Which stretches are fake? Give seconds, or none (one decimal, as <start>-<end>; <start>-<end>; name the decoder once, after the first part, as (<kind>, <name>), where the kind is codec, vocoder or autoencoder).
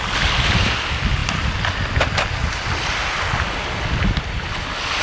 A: none